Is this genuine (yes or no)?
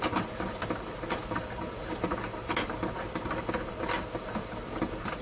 yes